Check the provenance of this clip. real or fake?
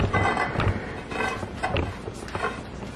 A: real